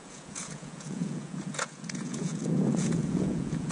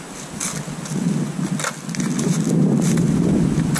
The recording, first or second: second